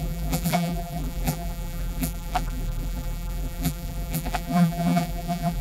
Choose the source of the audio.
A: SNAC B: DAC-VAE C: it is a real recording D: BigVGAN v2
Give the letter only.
D